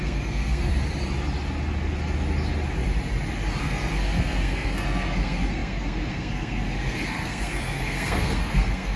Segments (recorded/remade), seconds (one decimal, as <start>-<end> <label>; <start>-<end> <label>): 0.0-0.7 remade; 0.7-3.6 recorded; 3.6-9.0 remade